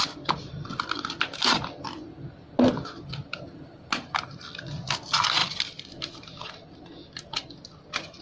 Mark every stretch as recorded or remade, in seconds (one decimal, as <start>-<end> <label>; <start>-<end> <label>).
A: 0.0-5.4 recorded; 5.4-8.2 remade